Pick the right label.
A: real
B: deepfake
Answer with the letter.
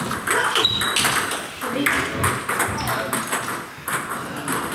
A